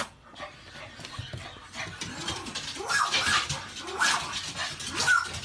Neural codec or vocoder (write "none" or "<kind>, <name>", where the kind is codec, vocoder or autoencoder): none